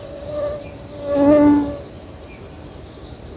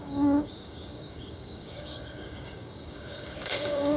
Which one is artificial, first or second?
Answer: second